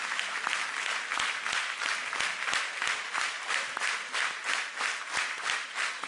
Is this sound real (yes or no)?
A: yes